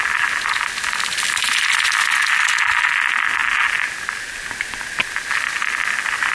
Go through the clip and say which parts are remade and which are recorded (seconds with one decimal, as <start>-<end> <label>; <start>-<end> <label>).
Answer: 0.0-6.3 recorded